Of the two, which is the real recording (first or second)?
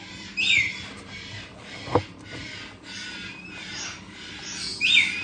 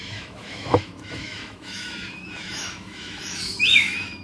first